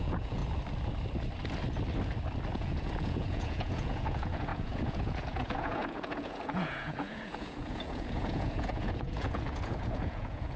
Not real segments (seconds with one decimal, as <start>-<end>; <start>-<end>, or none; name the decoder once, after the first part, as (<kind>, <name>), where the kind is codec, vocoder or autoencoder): 0.0-0.4 (vocoder, Vocos); 2.5-10.6

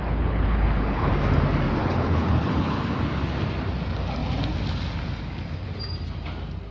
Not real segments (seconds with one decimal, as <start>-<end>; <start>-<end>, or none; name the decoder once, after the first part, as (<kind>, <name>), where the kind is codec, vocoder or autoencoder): 0.0-1.1 (codec, HILCodec); 1.8-2.8

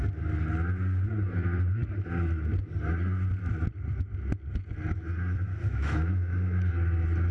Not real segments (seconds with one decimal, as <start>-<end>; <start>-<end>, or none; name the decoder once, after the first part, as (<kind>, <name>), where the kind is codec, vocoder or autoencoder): 5.5-6.7 (autoencoder, DAC-VAE)

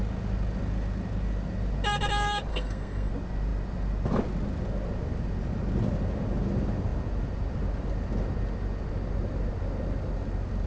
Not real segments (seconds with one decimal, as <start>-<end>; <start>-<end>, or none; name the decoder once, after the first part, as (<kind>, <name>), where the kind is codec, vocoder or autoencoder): 2.5-3.1 (codec, SNAC)

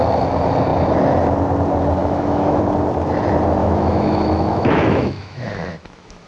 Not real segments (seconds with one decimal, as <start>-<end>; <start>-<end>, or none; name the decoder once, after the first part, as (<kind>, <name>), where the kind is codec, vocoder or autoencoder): 2.0-2.6 (autoencoder, DAC-VAE); 3.6-6.3

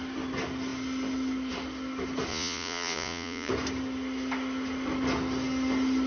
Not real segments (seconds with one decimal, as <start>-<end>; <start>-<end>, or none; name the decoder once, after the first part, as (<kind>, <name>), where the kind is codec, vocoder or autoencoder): 2.3-3.5 (vocoder, Vocos)

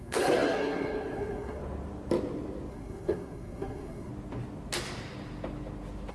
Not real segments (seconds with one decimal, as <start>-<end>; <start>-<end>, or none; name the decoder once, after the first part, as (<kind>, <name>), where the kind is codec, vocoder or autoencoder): 0.0-1.6 (codec, SNAC); 2.7-4.1

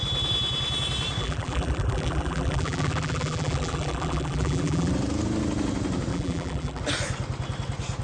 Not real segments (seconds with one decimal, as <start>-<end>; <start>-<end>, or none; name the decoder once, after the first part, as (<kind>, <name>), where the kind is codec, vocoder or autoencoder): 1.2-4.9 (vocoder, BigVGAN v2); 6.1-6.8